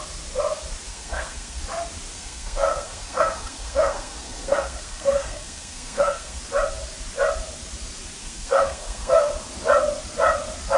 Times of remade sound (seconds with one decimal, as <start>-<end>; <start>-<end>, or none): 0.9-1.6; 2.1-6.4; 8.2-9.3